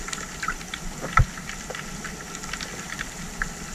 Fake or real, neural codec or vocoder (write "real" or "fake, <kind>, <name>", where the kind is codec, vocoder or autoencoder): real